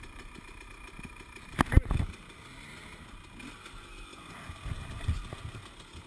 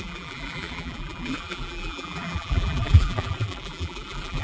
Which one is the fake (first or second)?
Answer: second